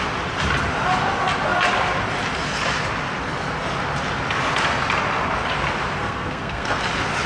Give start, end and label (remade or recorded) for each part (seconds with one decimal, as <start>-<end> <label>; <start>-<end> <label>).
0.0-6.0 recorded; 6.0-6.8 remade; 6.8-7.3 recorded

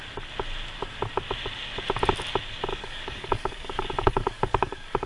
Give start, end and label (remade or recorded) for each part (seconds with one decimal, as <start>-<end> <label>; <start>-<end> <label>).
0.0-2.7 recorded; 2.7-5.1 remade

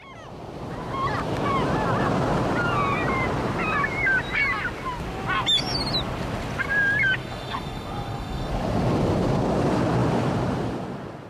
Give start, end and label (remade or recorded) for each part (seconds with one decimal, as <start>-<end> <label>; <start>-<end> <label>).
0.0-7.2 recorded; 7.2-8.5 remade; 8.5-11.3 recorded

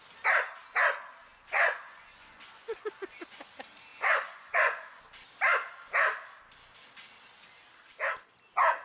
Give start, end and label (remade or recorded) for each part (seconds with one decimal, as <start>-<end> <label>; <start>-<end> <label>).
0.0-1.3 recorded; 1.3-3.5 remade; 3.5-3.9 recorded; 3.9-5.0 remade; 5.0-8.8 recorded

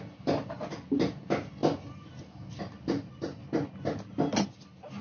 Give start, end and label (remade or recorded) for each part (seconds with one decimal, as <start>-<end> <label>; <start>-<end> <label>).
0.0-5.0 recorded

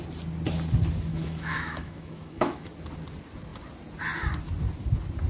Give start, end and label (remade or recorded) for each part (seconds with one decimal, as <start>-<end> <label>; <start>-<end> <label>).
0.0-1.1 recorded; 1.1-2.7 remade; 2.7-5.3 recorded

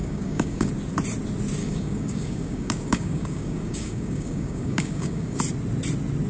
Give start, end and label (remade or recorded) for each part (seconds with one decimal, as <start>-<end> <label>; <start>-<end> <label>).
0.0-0.7 remade; 0.7-1.6 recorded; 1.6-5.4 remade; 5.4-6.3 recorded

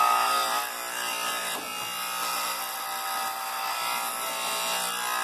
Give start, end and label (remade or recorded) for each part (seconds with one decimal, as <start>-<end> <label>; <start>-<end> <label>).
0.0-5.2 recorded